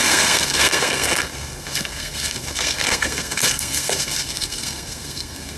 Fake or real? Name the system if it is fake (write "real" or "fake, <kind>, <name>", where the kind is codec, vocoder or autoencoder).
fake, codec, SNAC